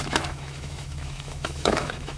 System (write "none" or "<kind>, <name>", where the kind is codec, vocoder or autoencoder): autoencoder, DAC-VAE